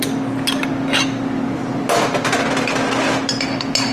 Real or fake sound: real